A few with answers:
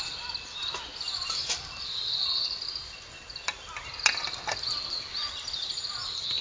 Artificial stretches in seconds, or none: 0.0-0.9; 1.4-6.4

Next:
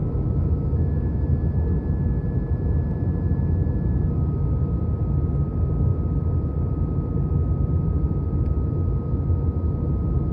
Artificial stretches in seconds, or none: 0.0-1.2

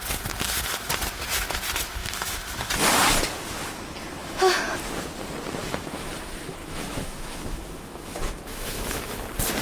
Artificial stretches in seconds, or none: 2.0-2.7; 4.2-4.7; 5.6-6.1; 6.6-9.2

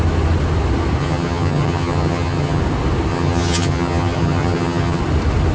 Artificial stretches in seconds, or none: 1.0-2.6; 3.1-5.0

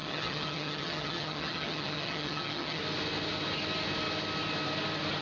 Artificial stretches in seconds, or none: 0.0-2.8

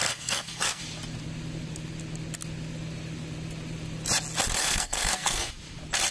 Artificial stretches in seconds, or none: 0.0-0.8; 4.6-5.5

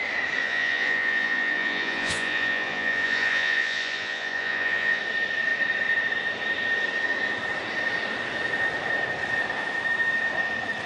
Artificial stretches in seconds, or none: 0.4-5.0